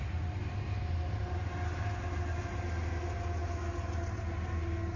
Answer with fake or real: real